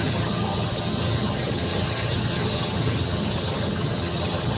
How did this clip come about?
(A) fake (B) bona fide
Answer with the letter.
A